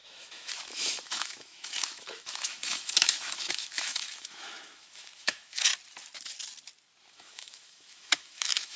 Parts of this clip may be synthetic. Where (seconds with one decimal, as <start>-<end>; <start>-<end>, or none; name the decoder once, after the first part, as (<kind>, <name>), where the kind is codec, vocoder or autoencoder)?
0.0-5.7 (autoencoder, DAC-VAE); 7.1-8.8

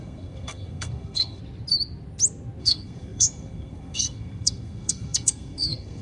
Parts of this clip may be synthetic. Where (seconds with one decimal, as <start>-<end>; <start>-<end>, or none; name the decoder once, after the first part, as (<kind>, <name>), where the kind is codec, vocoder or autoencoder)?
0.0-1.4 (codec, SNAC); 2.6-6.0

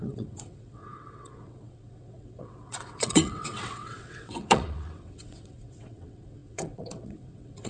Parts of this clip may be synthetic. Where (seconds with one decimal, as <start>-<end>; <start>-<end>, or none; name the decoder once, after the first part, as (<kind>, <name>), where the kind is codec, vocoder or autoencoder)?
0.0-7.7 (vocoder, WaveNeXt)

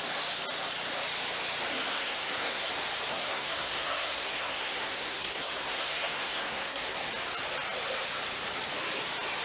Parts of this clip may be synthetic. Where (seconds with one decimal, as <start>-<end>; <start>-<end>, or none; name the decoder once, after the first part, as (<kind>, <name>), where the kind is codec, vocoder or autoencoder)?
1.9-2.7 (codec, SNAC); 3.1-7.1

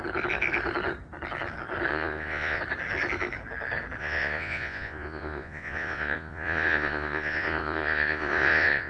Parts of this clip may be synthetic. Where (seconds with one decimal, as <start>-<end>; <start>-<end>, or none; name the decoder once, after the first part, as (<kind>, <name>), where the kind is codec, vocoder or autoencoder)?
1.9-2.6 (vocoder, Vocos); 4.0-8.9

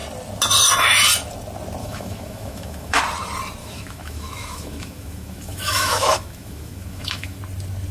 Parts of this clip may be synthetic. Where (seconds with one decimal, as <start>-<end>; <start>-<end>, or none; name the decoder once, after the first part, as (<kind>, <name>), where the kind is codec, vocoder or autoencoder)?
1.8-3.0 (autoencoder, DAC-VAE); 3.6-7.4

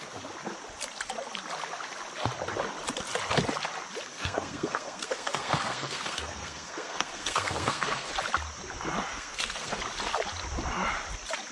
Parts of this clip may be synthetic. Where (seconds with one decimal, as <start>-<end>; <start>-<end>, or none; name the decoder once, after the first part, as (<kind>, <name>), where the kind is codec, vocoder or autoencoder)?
4.1-8.1 (codec, SNAC); 9.1-9.8